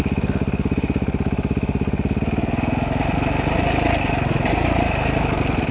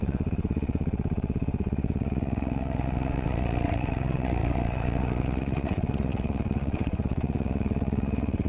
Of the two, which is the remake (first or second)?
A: second